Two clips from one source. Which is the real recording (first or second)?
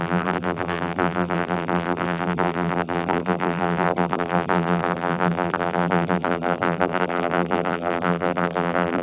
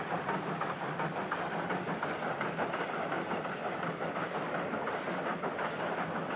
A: second